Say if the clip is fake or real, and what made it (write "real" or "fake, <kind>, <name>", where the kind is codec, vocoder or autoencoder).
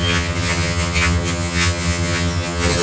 fake, vocoder, HiFi-GAN